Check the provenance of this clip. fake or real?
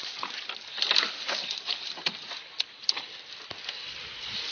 real